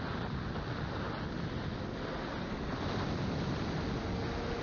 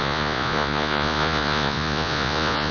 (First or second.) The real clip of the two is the first